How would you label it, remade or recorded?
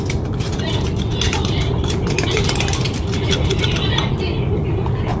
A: recorded